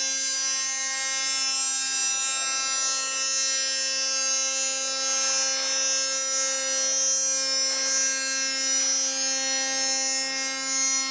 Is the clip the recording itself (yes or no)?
yes